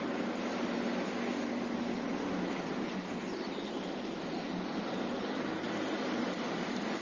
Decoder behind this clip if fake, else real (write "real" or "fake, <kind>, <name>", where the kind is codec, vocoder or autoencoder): real